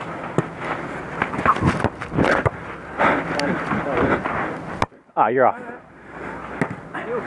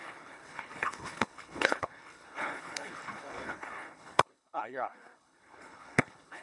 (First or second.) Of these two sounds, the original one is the first